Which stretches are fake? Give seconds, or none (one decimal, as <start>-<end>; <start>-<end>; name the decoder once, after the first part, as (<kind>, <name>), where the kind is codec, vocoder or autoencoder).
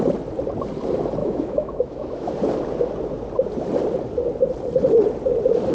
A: 1.2-2.3 (autoencoder, DAC-VAE)